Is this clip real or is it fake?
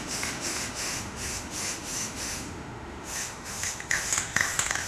fake